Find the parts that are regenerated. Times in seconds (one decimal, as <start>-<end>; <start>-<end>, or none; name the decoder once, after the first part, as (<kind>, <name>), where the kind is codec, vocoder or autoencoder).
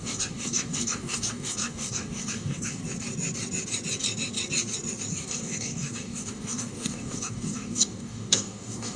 0.0-2.8 (codec, DAC); 5.1-9.0